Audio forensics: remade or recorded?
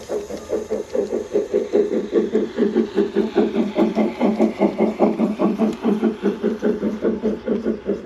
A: remade